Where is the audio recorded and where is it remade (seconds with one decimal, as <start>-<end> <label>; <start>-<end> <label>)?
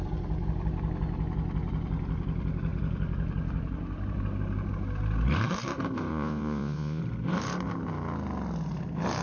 0.0-6.1 recorded; 6.1-7.0 remade; 7.0-9.2 recorded